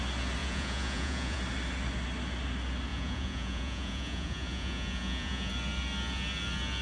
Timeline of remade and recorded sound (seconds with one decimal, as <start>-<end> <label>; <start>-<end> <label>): 0.0-0.4 recorded; 0.4-1.4 remade; 1.4-2.9 recorded; 2.9-5.5 remade; 5.5-6.8 recorded